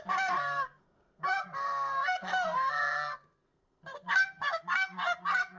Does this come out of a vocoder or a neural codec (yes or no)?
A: yes